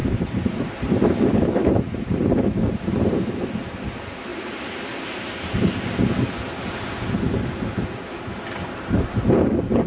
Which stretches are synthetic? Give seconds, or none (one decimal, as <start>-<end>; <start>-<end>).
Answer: 0.0-4.3; 8.2-9.9